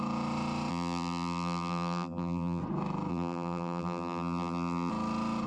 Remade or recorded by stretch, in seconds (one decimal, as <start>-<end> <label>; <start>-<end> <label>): 0.0-0.7 recorded; 0.7-2.6 remade; 2.6-3.1 recorded; 3.1-4.9 remade; 4.9-5.5 recorded